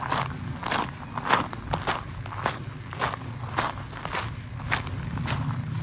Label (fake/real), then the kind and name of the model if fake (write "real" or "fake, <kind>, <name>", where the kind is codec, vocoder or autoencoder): real